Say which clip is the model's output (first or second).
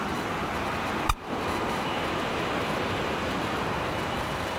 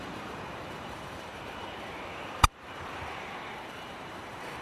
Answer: second